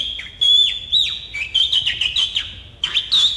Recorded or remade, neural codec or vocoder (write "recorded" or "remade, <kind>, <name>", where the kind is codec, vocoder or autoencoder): recorded